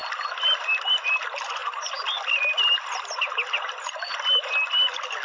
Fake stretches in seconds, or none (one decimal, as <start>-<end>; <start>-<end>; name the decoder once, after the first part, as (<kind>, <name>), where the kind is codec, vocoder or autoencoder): none